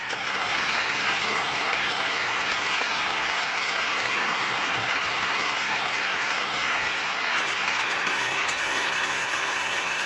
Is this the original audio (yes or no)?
no